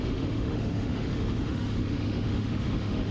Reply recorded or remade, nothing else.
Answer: remade